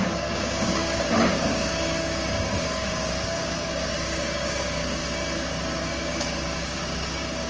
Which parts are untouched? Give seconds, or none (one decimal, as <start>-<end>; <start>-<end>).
5.0-5.9